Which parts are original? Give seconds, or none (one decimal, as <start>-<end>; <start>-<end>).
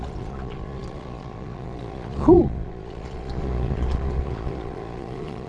none